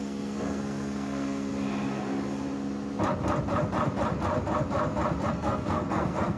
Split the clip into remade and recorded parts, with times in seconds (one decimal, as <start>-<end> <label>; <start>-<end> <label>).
0.0-1.5 remade; 1.5-5.3 recorded; 5.3-6.4 remade